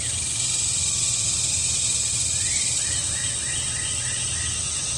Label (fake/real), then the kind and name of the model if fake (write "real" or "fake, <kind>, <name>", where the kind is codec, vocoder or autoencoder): real